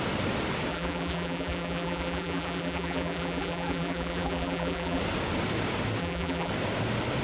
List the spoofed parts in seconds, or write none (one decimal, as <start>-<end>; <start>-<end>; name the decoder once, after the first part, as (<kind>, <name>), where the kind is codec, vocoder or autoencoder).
0.7-5.0 (vocoder, BigVGAN v2); 6.0-6.5